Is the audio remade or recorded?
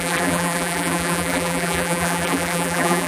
remade